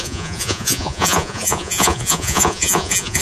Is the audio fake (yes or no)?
yes